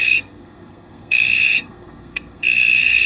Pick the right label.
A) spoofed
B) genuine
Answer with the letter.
A